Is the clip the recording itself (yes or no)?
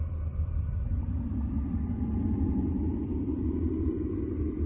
no